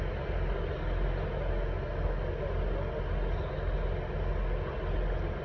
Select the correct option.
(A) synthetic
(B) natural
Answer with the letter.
B